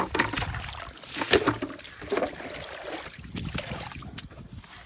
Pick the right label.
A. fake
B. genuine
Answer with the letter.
B